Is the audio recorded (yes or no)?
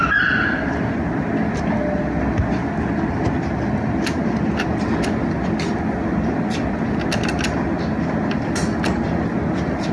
yes